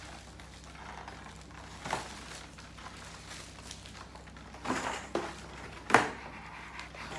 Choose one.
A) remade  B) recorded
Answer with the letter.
B